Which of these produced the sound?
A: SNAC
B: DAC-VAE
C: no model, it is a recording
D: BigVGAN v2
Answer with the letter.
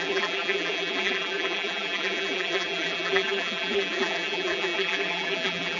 D